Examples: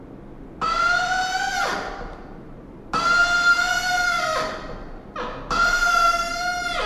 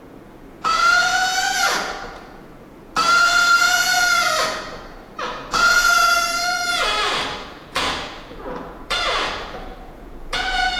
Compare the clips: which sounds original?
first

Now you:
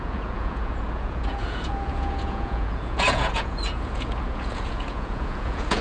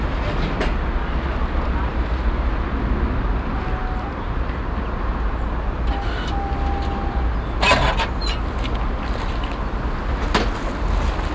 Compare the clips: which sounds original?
second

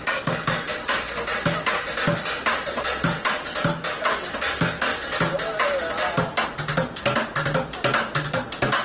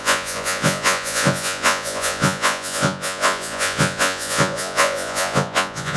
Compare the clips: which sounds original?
first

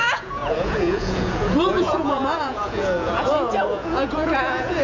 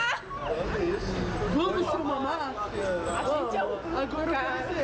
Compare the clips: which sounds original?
second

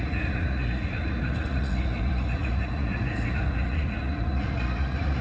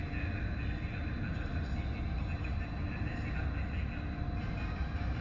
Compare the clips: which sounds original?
second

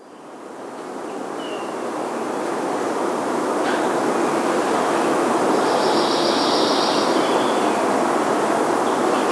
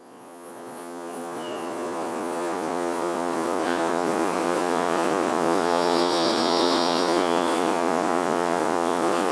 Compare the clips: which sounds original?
first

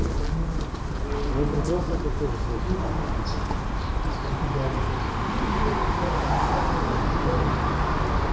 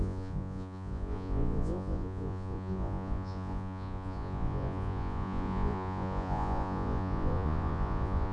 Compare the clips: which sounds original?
first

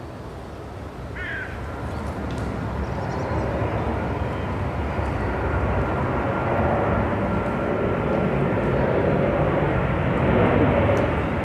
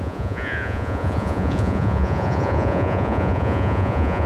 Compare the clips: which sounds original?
first